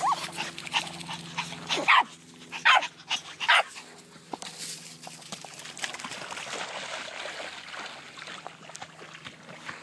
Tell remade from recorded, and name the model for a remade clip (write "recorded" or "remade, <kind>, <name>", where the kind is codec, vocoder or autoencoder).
recorded